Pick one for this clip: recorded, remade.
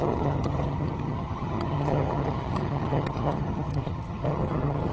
remade